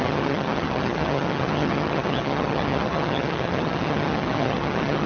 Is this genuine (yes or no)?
no